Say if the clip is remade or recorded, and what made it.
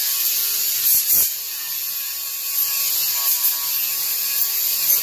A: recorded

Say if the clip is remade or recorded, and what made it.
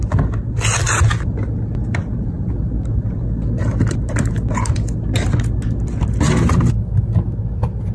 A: recorded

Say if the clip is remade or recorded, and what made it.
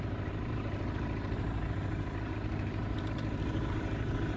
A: remade, vocoder, BigVGAN v2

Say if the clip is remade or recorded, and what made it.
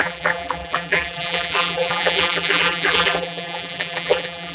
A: remade, vocoder, BigVGAN v2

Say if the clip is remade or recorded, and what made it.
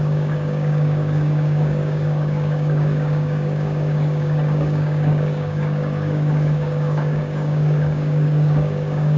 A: remade, codec, DAC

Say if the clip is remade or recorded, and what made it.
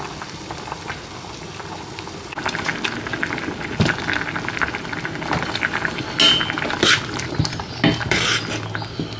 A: recorded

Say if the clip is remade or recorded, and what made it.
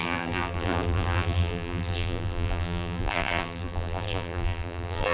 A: remade, vocoder, BigVGAN v2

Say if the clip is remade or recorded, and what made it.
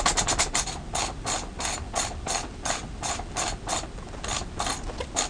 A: recorded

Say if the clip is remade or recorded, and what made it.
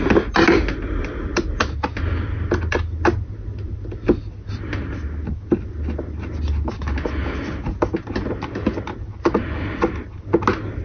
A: recorded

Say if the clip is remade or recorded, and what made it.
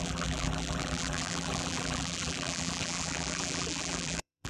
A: remade, vocoder, BigVGAN v2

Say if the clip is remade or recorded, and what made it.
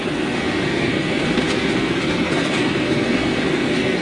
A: remade, codec, SNAC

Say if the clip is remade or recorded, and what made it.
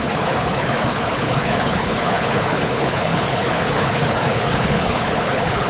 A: remade, codec, HILCodec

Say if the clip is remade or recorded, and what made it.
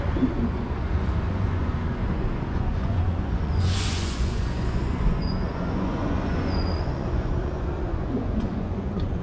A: remade, vocoder, Vocos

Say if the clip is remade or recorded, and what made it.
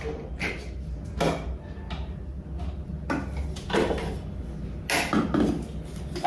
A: recorded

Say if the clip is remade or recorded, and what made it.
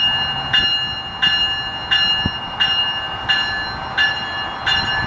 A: recorded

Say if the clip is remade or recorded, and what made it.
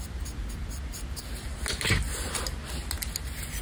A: recorded